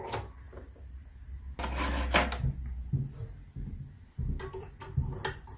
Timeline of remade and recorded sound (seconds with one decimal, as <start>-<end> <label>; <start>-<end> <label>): 0.0-5.6 recorded